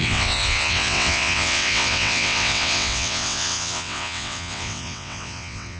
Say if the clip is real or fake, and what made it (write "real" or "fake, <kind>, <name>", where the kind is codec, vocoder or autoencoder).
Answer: fake, vocoder, WaveNeXt